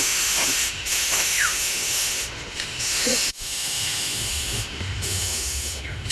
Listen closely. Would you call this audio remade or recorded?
remade